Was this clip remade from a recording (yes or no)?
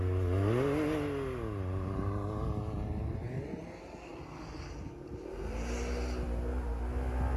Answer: no